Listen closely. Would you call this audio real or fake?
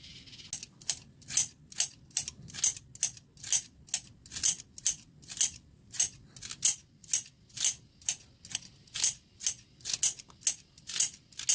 real